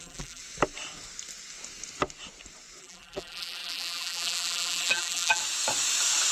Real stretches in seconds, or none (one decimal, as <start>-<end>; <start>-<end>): 0.4-2.8; 5.4-6.3